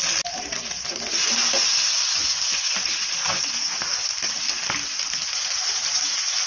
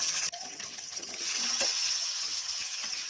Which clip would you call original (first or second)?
first